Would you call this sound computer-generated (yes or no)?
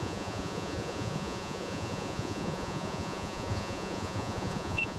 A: yes